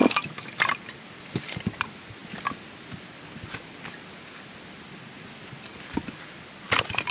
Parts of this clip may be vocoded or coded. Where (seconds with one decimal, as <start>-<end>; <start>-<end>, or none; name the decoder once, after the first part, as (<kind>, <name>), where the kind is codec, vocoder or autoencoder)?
0.0-0.6 (autoencoder, DAC-VAE)